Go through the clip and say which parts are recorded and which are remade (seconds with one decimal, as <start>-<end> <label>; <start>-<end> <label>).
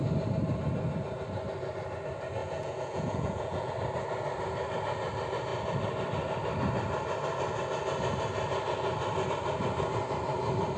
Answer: 0.0-2.4 recorded; 2.4-3.7 remade; 3.7-10.8 recorded